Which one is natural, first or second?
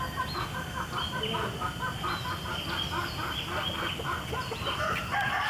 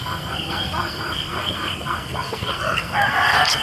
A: first